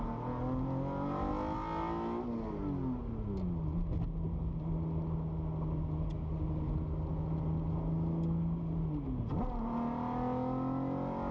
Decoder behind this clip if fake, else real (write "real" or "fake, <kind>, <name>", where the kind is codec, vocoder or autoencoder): real